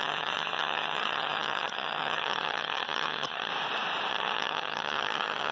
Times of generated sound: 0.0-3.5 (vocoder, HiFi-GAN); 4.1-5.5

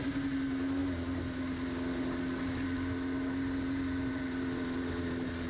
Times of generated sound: none

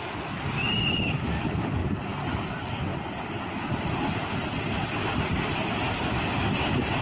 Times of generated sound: none

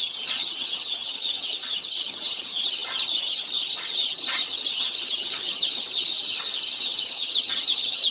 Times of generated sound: 0.0-8.1 (vocoder, HiFi-GAN)

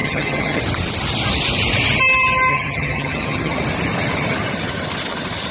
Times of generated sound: 0.0-0.6 (vocoder, HiFi-GAN); 2.5-3.6

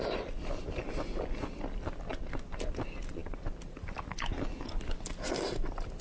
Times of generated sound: none

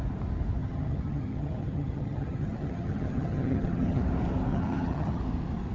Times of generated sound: 0.6-4.0 (vocoder, HiFi-GAN); 4.5-5.2